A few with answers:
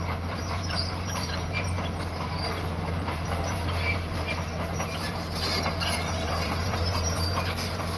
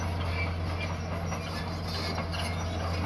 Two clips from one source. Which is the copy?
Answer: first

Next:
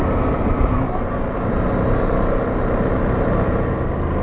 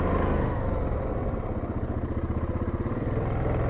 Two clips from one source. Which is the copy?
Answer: second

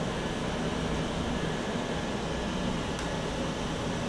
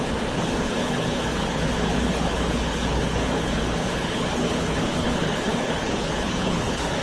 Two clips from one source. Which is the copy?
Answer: second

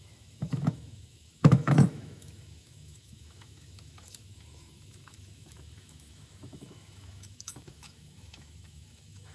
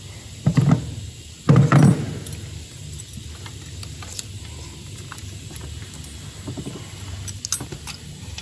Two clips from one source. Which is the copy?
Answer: first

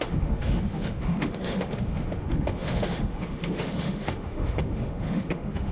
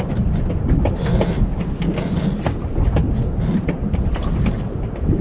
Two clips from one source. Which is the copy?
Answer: first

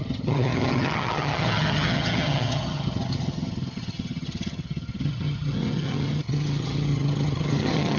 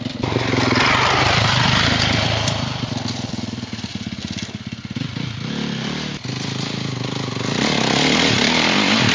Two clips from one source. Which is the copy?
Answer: first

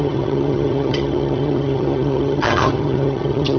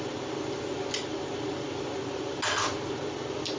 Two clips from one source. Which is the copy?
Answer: first